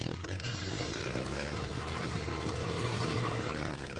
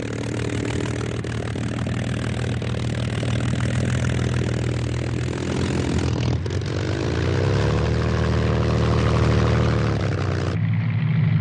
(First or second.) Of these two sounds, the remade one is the first